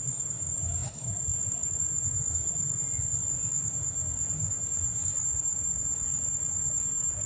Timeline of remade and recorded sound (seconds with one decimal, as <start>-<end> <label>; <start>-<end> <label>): 0.0-2.8 remade; 2.8-3.3 recorded; 3.3-7.3 remade

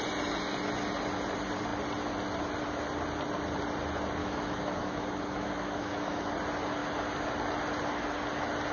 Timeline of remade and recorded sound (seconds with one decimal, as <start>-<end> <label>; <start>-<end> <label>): 0.0-4.2 recorded; 4.2-6.3 remade; 6.3-8.7 recorded

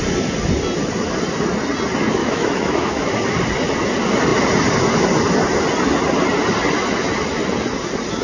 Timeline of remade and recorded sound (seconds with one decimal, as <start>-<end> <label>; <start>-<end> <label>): 0.0-2.2 recorded; 2.2-3.1 remade; 3.1-8.2 recorded

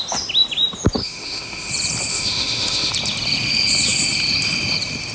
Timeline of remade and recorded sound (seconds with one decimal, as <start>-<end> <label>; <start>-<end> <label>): 0.0-1.0 recorded; 1.0-1.7 remade; 1.7-2.1 recorded; 2.1-2.9 remade; 2.9-5.1 recorded

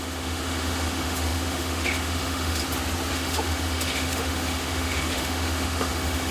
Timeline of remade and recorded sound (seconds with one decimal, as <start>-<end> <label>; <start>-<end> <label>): 0.0-2.6 remade; 2.6-3.1 recorded; 3.1-6.3 remade

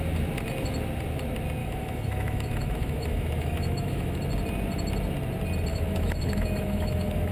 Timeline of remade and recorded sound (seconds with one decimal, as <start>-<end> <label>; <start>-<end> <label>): 0.0-1.6 recorded; 1.6-4.2 remade; 4.2-5.7 recorded; 5.7-7.3 remade

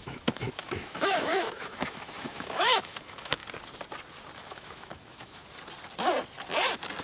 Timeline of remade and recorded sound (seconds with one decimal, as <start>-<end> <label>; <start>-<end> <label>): 0.0-3.4 remade; 3.4-4.4 recorded; 4.4-5.4 remade; 5.4-7.0 recorded

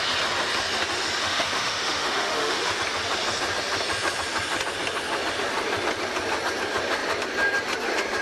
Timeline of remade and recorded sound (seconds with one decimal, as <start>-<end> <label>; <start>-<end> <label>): 0.0-1.2 recorded; 1.2-2.8 remade; 2.8-8.2 recorded